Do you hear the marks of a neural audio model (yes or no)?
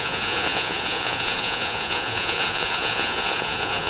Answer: yes